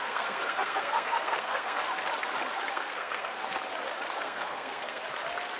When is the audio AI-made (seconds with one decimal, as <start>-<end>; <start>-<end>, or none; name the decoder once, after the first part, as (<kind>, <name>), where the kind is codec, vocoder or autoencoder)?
0.0-1.8 (codec, SNAC); 2.7-3.4; 4.2-5.0